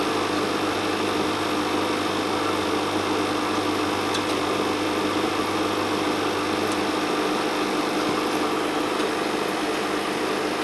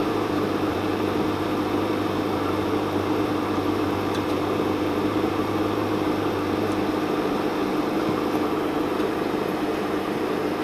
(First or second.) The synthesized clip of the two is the second